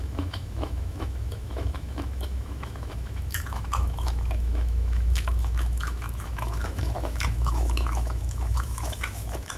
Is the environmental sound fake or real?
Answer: fake